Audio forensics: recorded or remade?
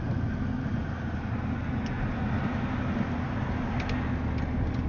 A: recorded